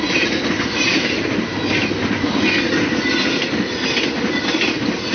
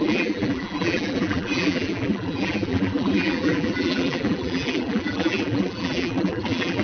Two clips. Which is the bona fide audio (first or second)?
first